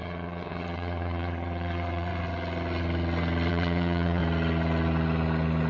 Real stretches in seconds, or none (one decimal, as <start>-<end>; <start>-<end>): 2.1-3.5; 4.2-5.7